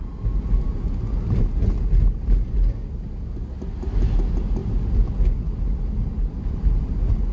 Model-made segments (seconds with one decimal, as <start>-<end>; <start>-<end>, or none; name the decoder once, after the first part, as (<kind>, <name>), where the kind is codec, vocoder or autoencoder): none